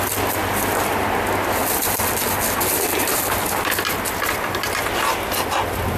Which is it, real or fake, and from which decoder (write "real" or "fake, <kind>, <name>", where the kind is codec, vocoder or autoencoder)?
real